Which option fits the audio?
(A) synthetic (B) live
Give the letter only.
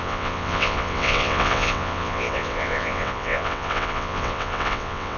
A